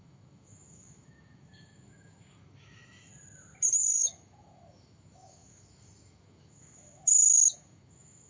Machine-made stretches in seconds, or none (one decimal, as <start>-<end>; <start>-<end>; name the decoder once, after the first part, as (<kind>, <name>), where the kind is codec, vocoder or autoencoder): 0.0-3.1 (autoencoder, DAC-VAE); 3.7-8.3